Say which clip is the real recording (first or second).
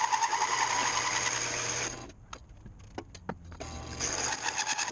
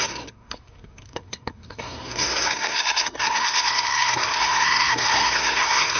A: first